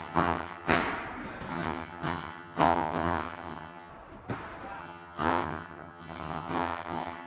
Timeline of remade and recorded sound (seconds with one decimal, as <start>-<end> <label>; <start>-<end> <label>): 0.0-0.8 remade; 0.8-1.5 recorded; 1.5-3.9 remade; 3.9-4.8 recorded; 4.8-7.3 remade